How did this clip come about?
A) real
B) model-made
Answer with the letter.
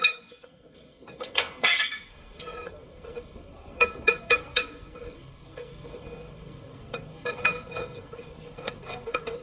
B